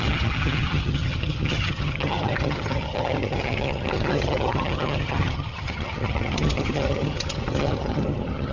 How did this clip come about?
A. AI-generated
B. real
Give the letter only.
A